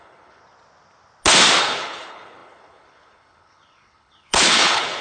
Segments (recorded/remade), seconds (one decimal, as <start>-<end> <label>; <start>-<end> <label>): 0.0-0.4 remade; 0.4-1.6 recorded; 1.6-5.0 remade